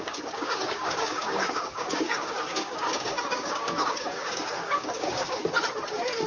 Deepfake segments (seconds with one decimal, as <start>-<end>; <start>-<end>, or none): 0.0-5.4